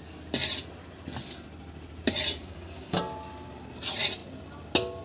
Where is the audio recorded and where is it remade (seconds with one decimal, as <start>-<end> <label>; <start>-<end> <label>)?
0.0-2.4 recorded; 2.4-3.0 remade; 3.0-5.0 recorded